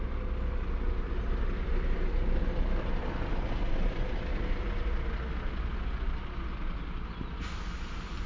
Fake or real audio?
real